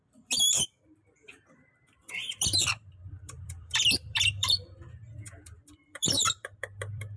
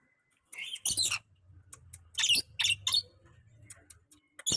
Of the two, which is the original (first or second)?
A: second